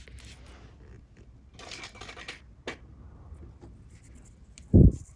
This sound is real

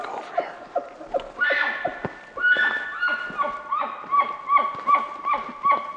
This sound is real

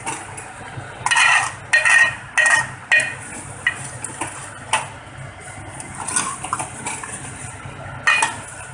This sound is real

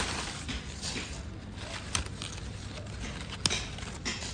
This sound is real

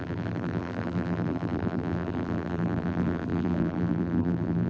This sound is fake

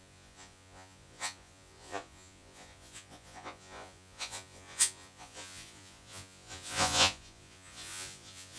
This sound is fake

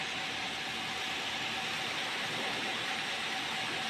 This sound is real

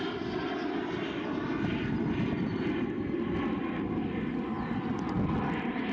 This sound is real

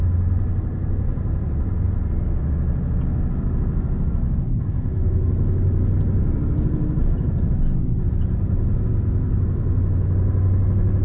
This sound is real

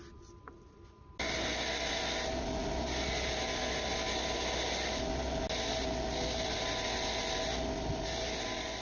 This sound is real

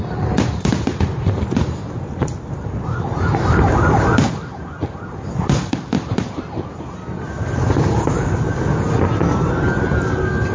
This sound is real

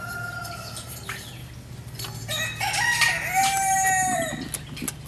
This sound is real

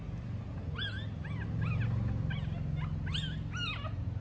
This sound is real